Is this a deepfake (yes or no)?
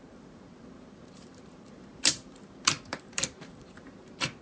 yes